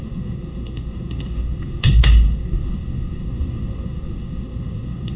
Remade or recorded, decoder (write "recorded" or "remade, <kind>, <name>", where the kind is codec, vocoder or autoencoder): remade, codec, SNAC